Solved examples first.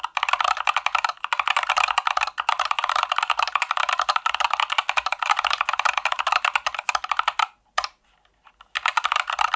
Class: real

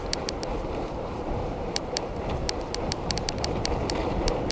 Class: fake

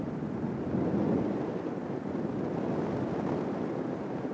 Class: real